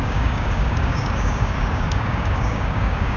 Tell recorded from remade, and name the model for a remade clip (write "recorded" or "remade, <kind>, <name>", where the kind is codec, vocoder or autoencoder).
remade, codec, DAC